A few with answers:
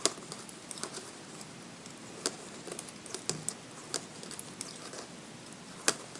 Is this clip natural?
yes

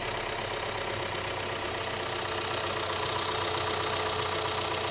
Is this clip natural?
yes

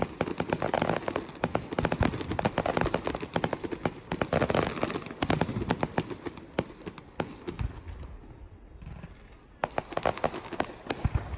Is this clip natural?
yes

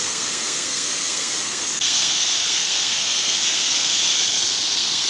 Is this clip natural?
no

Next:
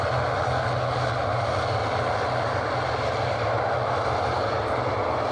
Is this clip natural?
yes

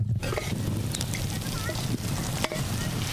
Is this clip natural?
yes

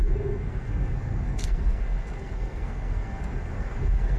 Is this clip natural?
no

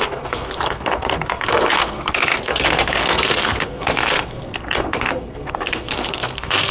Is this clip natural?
no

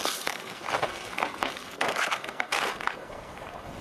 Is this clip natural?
no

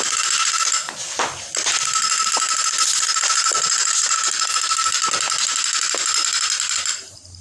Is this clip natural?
yes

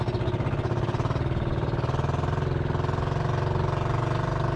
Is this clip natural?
yes